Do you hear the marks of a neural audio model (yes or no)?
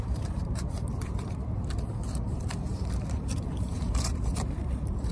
yes